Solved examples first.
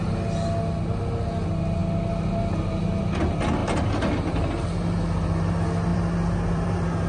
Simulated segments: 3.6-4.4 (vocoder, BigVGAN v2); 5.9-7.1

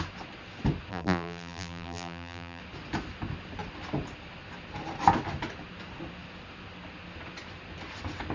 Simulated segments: 0.9-2.6 (vocoder, BigVGAN v2)